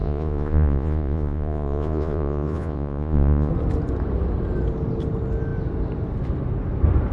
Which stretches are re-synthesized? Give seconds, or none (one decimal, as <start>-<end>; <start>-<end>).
0.0-3.5